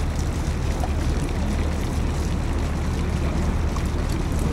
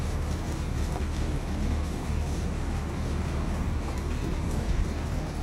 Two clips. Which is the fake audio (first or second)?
second